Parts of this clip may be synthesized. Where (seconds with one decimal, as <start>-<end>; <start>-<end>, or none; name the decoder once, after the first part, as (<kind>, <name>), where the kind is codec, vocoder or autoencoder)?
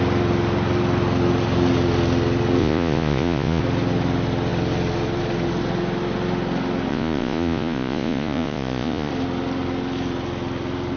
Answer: 2.6-3.6 (vocoder, Vocos); 6.9-9.1